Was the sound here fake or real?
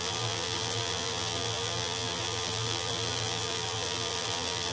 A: fake